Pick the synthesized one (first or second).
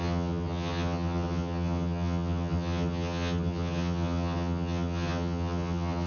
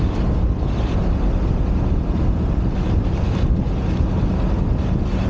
first